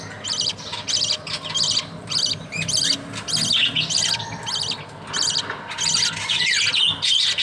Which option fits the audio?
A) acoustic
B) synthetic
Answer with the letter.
A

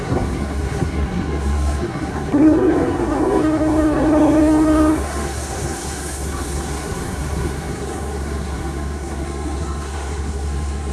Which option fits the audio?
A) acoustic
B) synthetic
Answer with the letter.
B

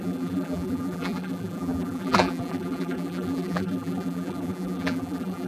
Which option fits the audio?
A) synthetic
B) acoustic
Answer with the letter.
A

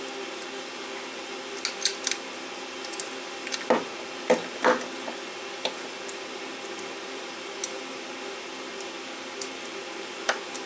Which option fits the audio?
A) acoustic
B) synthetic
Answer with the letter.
A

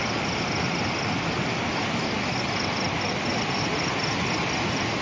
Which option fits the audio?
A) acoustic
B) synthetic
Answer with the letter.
A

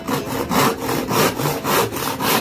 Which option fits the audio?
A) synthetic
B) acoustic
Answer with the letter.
B